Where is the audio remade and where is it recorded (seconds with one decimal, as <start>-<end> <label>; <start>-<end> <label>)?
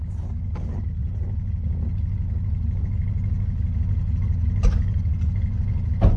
0.0-6.2 recorded